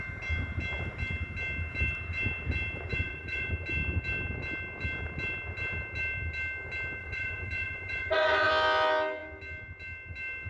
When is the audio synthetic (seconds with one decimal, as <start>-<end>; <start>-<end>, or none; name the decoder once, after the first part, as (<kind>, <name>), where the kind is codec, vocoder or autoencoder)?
2.9-3.5 (vocoder, Vocos); 7.0-8.5